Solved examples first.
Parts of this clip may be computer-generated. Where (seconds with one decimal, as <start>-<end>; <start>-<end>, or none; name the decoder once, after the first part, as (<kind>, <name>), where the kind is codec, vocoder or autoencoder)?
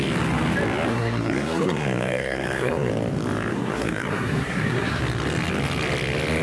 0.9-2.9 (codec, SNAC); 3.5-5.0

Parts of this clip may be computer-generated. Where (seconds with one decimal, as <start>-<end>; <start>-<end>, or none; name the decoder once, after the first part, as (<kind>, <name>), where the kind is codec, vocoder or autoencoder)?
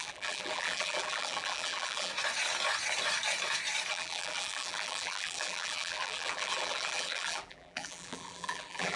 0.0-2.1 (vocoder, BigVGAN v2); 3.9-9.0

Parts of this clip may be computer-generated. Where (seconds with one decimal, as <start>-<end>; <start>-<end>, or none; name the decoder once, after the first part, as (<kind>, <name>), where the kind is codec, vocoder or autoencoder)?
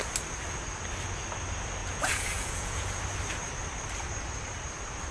1.8-3.0 (vocoder, Vocos)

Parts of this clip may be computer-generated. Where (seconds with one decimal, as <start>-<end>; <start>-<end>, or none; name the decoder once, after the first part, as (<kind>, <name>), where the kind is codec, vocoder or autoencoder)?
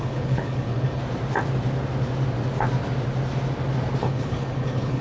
0.0-1.0 (codec, HILCodec); 4.0-5.0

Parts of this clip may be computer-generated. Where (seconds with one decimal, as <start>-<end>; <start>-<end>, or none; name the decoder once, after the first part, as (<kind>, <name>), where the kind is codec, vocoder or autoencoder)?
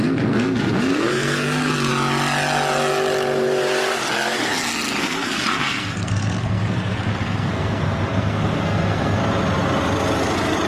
0.0-1.9 (codec, SNAC); 5.0-9.2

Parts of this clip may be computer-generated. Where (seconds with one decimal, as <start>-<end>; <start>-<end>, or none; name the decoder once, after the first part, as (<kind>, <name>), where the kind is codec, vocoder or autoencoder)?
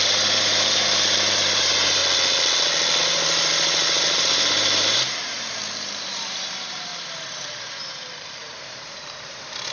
0.0-2.0 (vocoder, BigVGAN v2); 3.0-9.7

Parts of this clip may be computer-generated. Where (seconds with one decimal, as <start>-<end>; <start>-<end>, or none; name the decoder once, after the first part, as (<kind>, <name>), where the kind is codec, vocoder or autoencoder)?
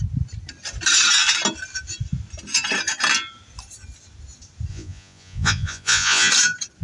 4.7-6.3 (vocoder, Vocos)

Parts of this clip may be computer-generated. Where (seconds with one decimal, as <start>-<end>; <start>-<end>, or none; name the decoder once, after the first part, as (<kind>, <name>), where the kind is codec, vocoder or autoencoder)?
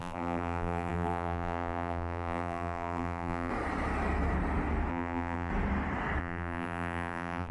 0.0-3.5 (vocoder, BigVGAN v2); 4.9-5.5; 6.2-7.5